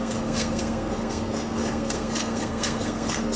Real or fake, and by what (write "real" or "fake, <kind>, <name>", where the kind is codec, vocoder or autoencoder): fake, codec, SNAC